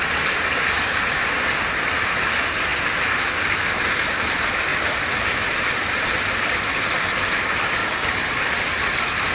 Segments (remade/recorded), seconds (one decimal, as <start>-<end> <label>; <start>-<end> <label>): 0.0-7.8 recorded; 7.8-8.3 remade; 8.3-9.3 recorded